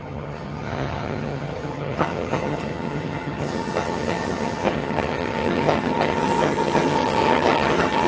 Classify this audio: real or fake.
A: fake